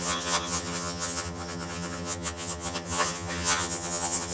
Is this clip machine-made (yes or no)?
yes